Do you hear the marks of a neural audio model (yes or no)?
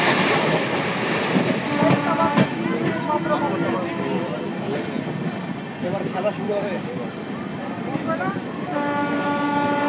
no